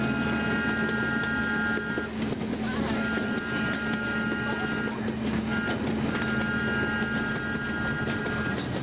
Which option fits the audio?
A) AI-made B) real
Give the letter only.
B